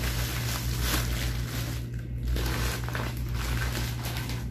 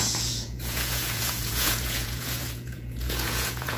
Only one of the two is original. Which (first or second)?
first